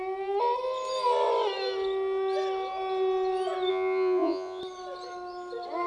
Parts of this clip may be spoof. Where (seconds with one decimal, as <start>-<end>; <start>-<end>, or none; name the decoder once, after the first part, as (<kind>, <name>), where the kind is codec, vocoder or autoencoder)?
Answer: 3.7-4.6 (vocoder, Vocos)